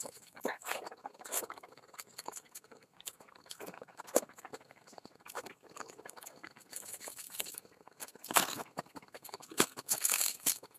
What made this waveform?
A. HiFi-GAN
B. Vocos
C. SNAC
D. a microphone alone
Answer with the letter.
C